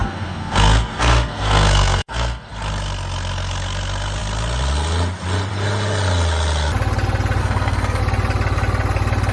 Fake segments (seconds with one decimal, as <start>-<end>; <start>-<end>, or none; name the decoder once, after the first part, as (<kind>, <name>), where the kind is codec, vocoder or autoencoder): 0.0-2.5 (codec, SNAC); 7.4-8.0